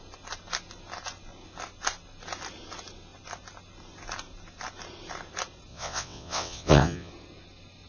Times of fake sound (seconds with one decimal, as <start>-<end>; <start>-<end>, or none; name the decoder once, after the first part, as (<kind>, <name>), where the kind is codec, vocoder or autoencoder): 5.7-7.1 (vocoder, WaveNeXt)